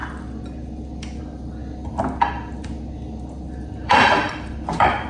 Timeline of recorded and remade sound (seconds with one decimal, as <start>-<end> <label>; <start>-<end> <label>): 0.0-1.2 recorded; 1.2-1.6 remade; 1.6-3.7 recorded; 3.7-5.1 remade